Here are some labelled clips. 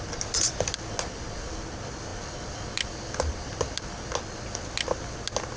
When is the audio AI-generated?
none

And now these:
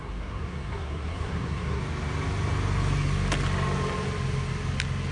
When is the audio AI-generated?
0.0-1.8 (codec, SNAC)

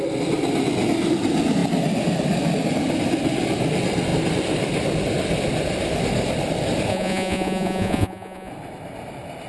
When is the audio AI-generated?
6.9-8.5 (vocoder, Vocos)

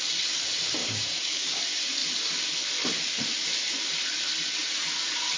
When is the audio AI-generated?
0.8-1.6 (codec, DAC)

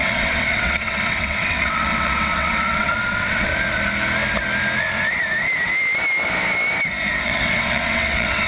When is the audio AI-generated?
0.0-3.5 (vocoder, WaveNeXt); 7.2-8.5

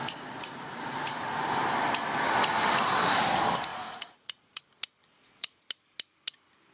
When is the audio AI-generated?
3.7-4.6 (vocoder, Vocos); 5.0-5.6

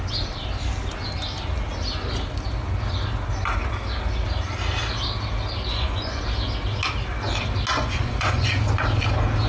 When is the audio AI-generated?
5.7-6.2 (vocoder, Vocos); 7.7-8.6